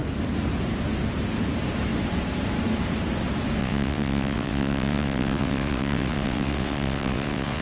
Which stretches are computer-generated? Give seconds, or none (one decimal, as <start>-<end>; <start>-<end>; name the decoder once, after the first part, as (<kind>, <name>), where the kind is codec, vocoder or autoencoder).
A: 3.6-7.6 (vocoder, WaveNeXt)